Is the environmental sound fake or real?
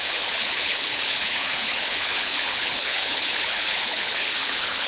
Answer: fake